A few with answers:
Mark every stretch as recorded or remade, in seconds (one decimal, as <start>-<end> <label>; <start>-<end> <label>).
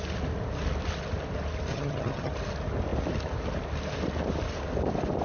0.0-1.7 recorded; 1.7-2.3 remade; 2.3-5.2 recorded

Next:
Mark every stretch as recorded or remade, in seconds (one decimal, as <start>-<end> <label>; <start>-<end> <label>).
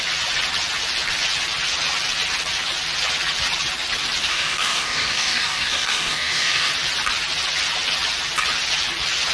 0.0-4.3 recorded; 4.3-6.7 remade; 6.7-9.3 recorded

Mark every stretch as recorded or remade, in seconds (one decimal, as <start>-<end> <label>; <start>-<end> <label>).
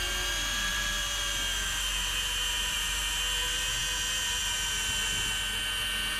0.0-0.7 recorded; 0.7-3.0 remade; 3.0-6.2 recorded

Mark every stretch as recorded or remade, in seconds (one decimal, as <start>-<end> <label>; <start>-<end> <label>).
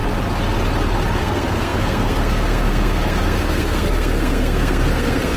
0.0-1.2 recorded; 1.2-5.4 remade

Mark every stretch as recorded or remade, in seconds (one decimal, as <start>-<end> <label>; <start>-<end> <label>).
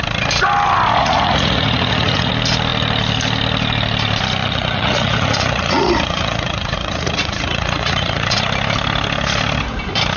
0.0-1.0 recorded; 1.0-2.3 remade; 2.3-4.4 recorded; 4.4-8.4 remade; 8.4-10.2 recorded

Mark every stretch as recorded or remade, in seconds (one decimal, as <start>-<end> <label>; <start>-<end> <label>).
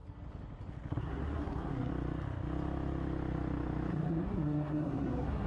0.0-1.0 recorded; 1.0-1.9 remade; 1.9-3.9 recorded; 3.9-5.5 remade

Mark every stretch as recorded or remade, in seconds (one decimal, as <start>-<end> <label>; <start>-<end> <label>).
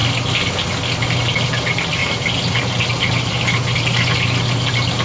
0.0-5.0 recorded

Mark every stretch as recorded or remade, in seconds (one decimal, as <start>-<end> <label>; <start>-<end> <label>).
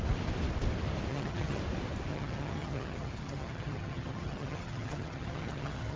0.0-1.1 recorded; 1.1-1.6 remade; 1.6-2.1 recorded; 2.1-6.0 remade